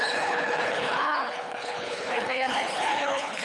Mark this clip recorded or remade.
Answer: remade